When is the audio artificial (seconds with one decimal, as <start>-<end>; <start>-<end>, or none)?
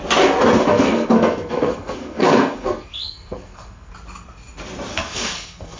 0.7-3.9; 4.9-5.8